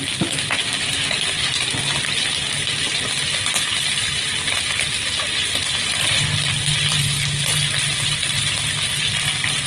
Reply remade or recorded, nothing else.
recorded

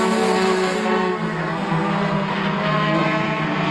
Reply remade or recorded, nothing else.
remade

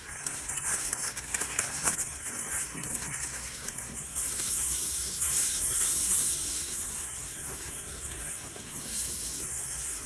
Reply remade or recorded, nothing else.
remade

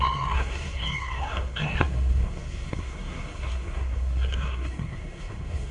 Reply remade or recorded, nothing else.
remade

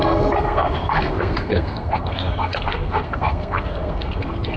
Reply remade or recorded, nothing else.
remade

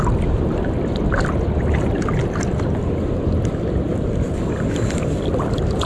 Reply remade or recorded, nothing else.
recorded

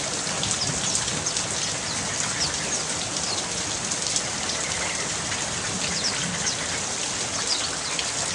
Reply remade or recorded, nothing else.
recorded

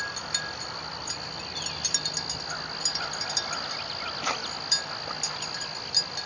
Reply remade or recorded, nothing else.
recorded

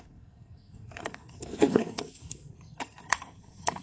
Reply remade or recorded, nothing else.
remade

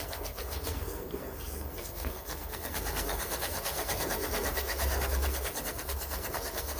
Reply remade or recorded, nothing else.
remade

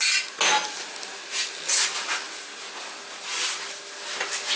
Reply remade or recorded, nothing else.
recorded